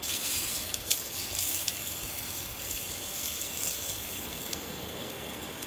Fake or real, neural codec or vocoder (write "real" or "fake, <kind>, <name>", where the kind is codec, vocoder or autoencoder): fake, codec, SNAC